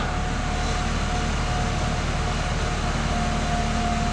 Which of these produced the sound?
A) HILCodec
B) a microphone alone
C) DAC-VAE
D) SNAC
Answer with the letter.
B